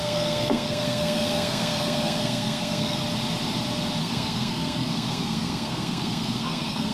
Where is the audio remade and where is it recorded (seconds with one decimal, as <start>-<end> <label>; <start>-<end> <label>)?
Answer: 0.0-3.0 remade; 3.0-4.0 recorded; 4.0-6.9 remade